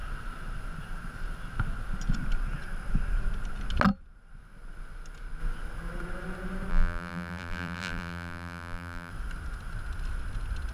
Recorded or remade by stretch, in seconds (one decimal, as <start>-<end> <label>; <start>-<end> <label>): 0.0-6.7 recorded; 6.7-9.1 remade; 9.1-10.7 recorded